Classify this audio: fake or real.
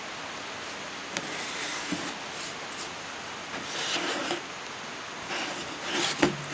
real